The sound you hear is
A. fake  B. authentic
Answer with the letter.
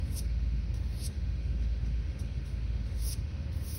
A